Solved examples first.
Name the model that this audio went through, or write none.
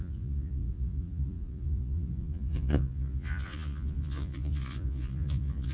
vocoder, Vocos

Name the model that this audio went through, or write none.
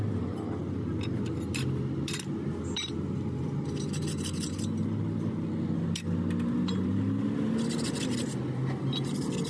none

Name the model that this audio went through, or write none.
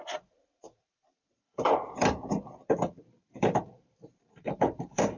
vocoder, BigVGAN v2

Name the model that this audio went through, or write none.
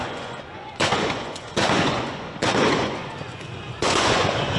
vocoder, Vocos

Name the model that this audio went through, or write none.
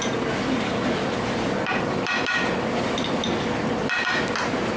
none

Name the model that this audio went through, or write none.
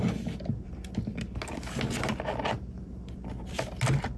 none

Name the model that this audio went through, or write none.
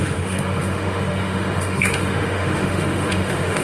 autoencoder, DAC-VAE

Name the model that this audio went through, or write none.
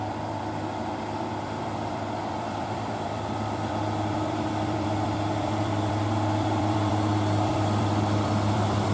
vocoder, BigVGAN v2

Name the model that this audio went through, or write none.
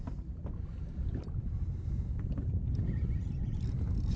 none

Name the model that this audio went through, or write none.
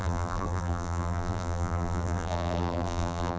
vocoder, BigVGAN v2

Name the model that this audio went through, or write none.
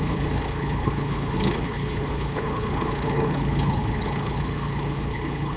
codec, HILCodec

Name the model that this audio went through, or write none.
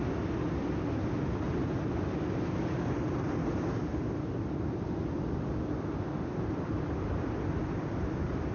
none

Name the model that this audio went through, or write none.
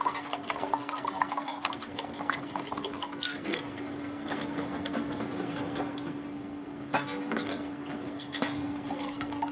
codec, SNAC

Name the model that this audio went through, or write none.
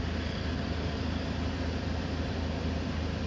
none